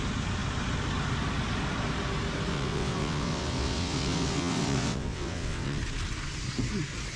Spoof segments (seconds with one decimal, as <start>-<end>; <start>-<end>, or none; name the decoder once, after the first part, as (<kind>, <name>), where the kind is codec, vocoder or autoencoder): 2.5-5.8 (vocoder, WaveNeXt)